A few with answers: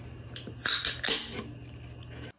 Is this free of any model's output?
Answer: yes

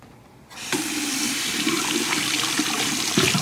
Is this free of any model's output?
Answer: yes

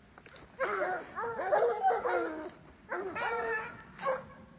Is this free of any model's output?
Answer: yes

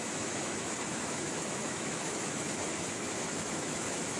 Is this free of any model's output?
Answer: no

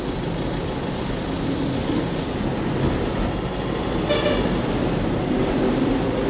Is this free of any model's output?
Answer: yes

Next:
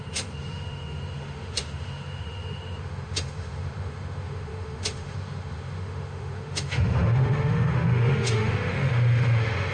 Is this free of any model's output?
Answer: no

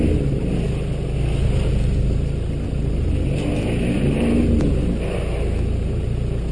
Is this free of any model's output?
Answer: yes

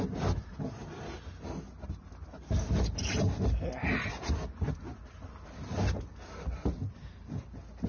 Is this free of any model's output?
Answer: yes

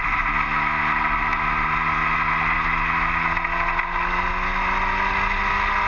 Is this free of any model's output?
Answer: yes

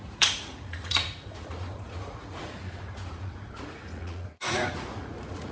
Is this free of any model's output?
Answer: no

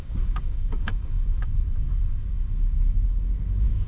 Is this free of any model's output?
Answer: no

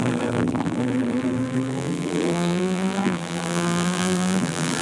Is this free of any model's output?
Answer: no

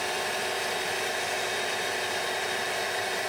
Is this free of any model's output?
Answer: yes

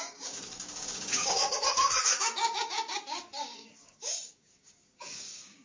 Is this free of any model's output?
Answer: no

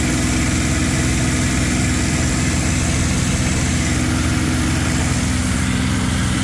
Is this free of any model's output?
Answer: yes